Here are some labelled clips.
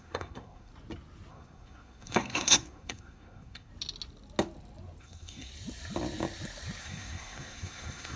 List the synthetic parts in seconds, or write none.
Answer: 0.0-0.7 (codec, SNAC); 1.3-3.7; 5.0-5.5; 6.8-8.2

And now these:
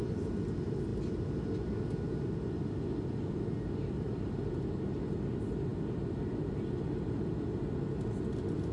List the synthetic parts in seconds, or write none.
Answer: none

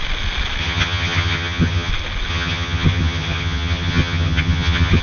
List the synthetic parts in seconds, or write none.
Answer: 0.6-1.9 (vocoder, HiFi-GAN); 2.3-5.0

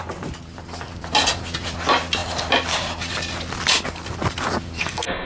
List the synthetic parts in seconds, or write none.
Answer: 4.8-5.3 (codec, SNAC)

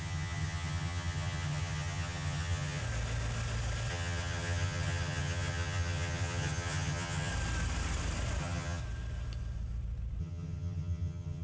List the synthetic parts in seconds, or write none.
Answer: 0.0-2.8 (vocoder, HiFi-GAN); 3.9-7.3; 8.4-8.8; 10.2-11.4

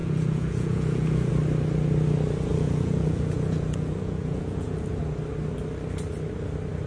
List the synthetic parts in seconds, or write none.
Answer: 0.0-1.3 (vocoder, Vocos); 2.5-5.0

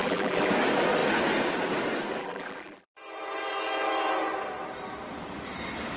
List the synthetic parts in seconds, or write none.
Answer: 0.0-0.5 (vocoder, BigVGAN v2); 2.2-2.9